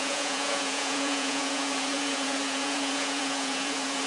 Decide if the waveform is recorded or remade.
remade